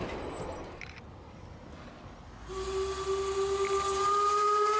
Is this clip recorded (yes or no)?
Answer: yes